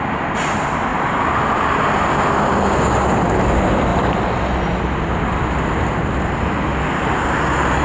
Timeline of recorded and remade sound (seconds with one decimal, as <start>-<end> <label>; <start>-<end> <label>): 0.0-7.8 recorded